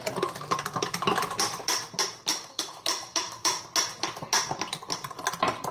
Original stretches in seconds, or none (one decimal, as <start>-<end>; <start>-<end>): 0.0-2.3; 3.6-5.7